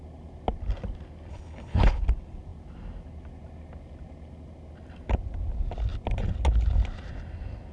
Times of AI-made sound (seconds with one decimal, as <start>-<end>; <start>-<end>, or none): 1.3-2.0